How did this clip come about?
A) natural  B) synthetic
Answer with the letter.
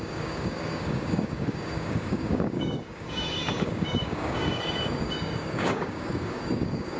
B